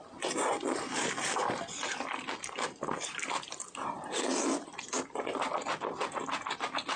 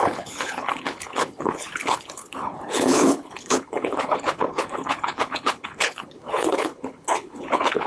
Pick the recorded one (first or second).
first